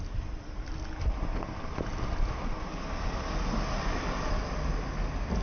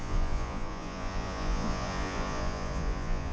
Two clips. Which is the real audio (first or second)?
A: first